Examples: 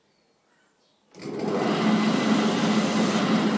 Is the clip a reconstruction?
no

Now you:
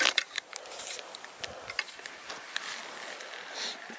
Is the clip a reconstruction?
no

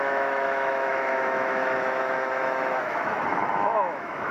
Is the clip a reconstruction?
yes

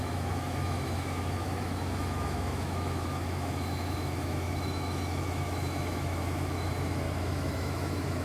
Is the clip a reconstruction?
yes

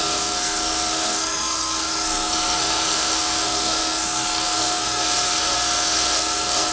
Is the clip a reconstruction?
yes